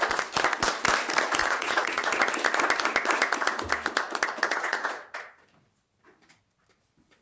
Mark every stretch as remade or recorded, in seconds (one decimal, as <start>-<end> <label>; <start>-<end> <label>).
0.0-1.4 recorded; 1.4-2.2 remade; 2.2-4.5 recorded; 4.5-5.1 remade; 5.1-7.2 recorded